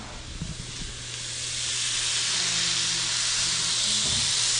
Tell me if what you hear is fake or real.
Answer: real